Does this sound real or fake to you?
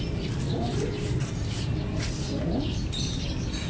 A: real